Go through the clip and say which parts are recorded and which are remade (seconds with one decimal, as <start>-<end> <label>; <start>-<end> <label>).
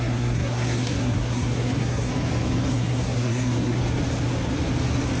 0.0-2.1 remade; 2.1-2.7 recorded; 2.7-3.8 remade; 3.8-5.2 recorded